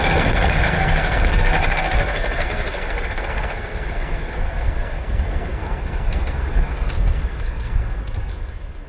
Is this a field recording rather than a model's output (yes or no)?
no